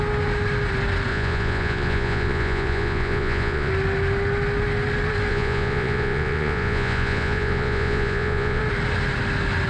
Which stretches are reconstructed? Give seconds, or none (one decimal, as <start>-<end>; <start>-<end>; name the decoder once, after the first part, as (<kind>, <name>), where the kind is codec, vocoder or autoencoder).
1.1-3.7 (vocoder, Vocos); 5.3-8.6